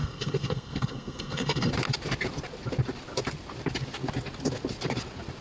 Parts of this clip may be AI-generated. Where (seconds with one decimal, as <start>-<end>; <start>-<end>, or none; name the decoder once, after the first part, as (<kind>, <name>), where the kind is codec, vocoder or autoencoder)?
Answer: 0.0-1.7 (codec, SNAC)